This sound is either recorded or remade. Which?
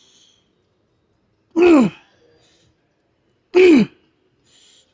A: recorded